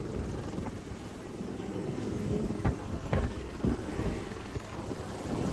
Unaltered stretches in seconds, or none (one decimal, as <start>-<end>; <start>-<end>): 0.0-1.5; 4.8-5.5